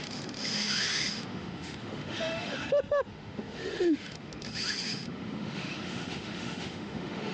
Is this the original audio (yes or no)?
no